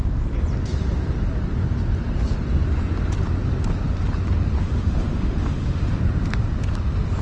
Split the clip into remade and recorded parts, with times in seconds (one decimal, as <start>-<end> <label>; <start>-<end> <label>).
0.0-4.6 recorded; 4.6-6.0 remade; 6.0-7.2 recorded